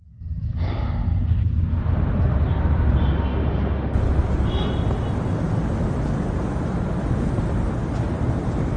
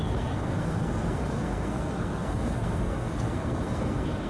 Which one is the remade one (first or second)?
second